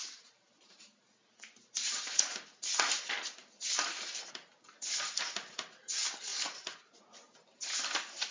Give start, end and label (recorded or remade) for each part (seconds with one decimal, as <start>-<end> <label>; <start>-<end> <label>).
0.0-8.3 recorded